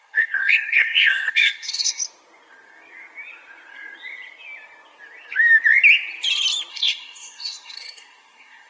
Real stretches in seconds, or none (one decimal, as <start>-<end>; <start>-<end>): 2.0-6.7

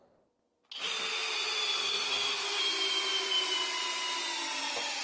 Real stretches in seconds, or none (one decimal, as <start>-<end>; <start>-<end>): 0.0-1.8; 2.6-5.0